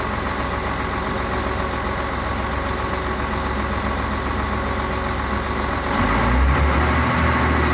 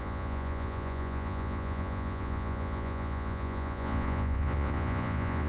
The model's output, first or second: second